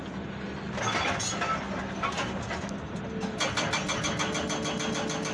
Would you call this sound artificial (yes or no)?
no